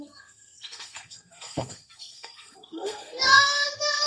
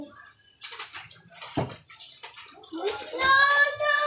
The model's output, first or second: first